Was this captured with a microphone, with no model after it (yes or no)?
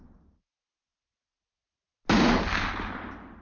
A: yes